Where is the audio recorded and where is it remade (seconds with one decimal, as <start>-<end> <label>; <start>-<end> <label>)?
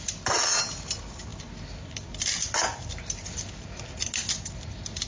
0.0-5.1 recorded